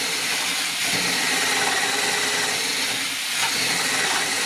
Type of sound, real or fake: real